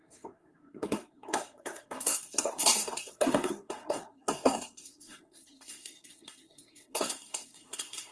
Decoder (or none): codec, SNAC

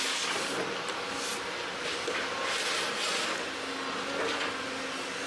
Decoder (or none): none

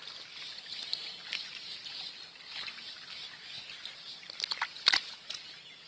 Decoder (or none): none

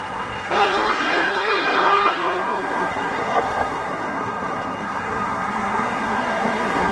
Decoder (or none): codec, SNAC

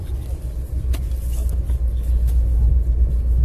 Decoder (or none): none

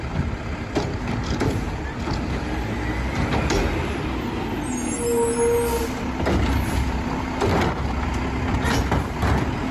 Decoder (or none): none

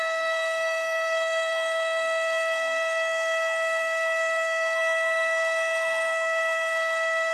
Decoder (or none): codec, SNAC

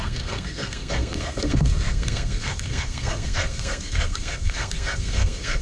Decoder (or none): codec, SNAC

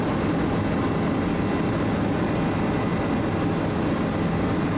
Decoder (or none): none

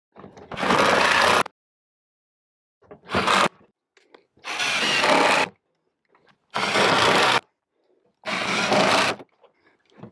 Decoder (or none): none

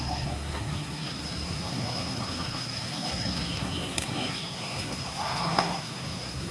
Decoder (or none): codec, SNAC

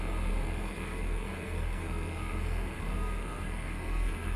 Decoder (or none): codec, SNAC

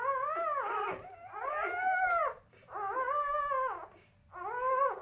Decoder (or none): none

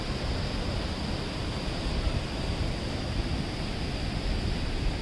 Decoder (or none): none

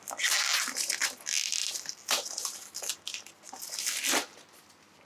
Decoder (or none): none